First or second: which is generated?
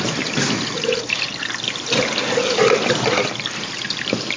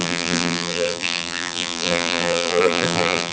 second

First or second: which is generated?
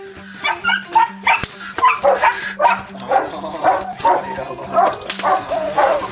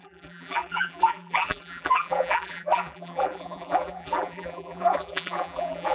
second